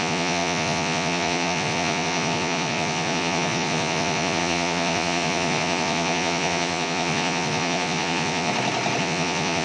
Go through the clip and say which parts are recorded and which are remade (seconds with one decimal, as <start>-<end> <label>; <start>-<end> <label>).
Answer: 0.0-8.5 remade; 8.5-9.0 recorded; 9.0-9.6 remade